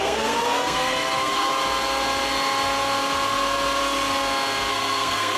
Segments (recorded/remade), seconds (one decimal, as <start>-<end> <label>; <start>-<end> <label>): 0.0-1.5 remade; 1.5-4.7 recorded; 4.7-5.4 remade